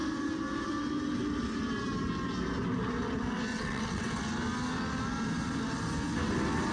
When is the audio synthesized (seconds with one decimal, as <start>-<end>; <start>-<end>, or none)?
3.5-4.2